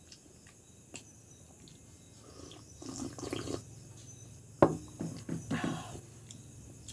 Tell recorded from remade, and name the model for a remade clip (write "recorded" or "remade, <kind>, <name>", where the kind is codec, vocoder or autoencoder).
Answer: recorded